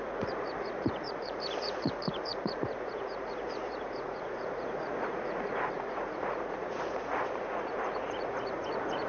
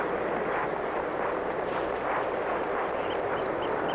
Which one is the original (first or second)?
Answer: second